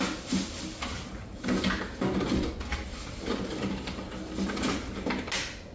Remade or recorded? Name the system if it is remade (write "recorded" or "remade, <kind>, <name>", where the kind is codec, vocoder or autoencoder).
recorded